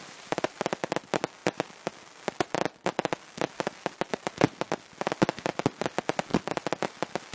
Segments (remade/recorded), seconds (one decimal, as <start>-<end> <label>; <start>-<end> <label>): 0.0-7.3 recorded